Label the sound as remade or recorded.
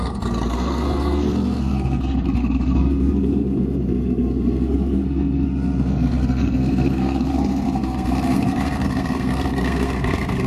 remade